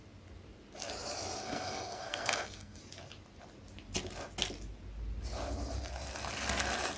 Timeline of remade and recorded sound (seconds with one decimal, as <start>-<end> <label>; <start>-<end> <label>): 0.0-1.4 recorded; 1.4-2.8 remade; 2.8-7.0 recorded